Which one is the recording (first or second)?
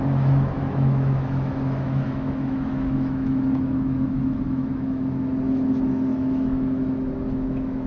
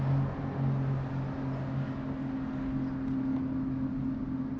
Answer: second